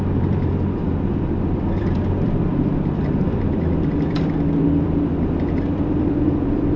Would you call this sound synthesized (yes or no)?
yes